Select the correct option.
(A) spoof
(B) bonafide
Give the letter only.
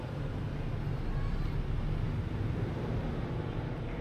B